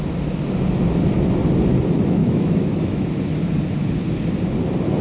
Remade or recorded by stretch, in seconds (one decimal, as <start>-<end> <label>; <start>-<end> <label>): 0.0-2.2 recorded; 2.2-3.1 remade; 3.1-5.0 recorded

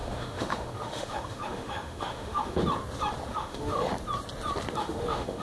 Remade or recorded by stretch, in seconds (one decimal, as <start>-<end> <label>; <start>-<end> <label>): 0.0-2.6 remade; 2.6-3.3 recorded; 3.3-3.9 remade; 3.9-4.8 recorded; 4.8-5.4 remade